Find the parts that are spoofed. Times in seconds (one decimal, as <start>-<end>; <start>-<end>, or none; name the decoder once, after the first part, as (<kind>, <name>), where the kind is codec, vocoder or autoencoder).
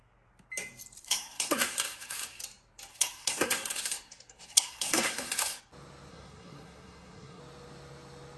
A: 1.0-2.4 (codec, SNAC); 2.9-5.6; 6.1-7.4